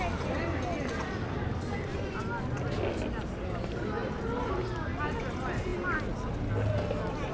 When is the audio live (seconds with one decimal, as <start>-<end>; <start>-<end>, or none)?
0.0-1.9; 2.5-4.0; 4.5-7.3